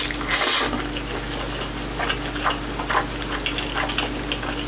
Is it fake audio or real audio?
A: real